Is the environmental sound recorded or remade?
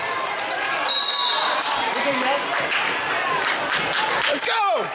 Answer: recorded